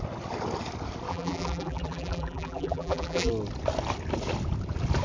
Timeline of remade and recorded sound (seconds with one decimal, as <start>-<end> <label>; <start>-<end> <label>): 0.0-1.1 recorded; 1.1-3.3 remade; 3.3-5.0 recorded